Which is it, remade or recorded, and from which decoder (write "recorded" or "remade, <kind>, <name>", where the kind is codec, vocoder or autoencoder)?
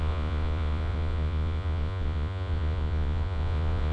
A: remade, vocoder, Vocos